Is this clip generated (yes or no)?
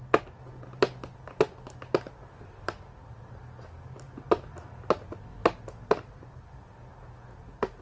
no